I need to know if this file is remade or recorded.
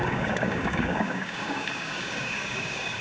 remade